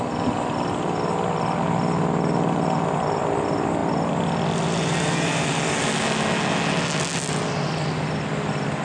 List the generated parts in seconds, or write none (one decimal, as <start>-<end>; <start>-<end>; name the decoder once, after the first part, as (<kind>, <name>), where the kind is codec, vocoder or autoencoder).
none